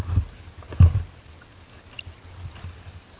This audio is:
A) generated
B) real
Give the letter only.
B